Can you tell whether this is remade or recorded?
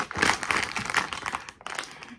recorded